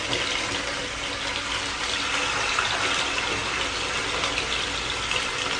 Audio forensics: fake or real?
real